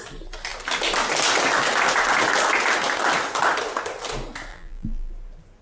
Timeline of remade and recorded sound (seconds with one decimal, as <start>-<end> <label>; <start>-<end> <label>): 0.0-4.5 recorded; 4.5-5.1 remade; 5.1-5.6 recorded

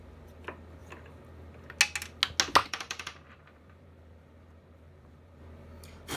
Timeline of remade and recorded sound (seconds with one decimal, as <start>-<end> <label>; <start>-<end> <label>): 0.0-2.6 recorded; 2.6-5.4 remade; 5.4-6.2 recorded